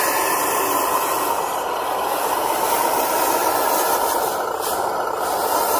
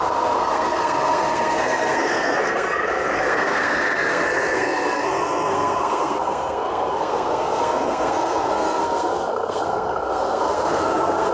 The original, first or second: first